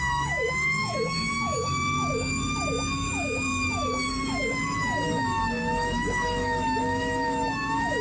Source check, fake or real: fake